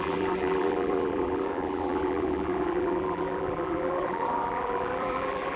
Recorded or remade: remade